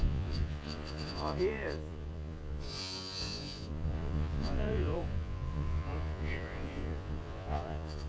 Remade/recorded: remade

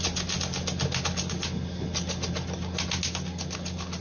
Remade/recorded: recorded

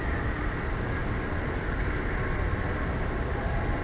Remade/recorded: recorded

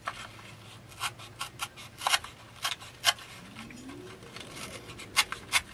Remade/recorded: recorded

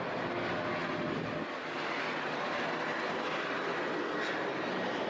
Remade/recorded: recorded